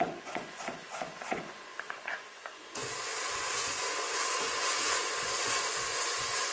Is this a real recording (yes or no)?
no